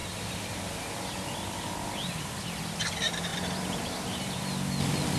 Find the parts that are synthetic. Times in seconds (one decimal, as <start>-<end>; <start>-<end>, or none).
3.3-4.4